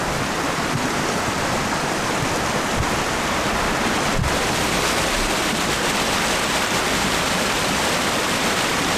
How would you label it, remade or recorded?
recorded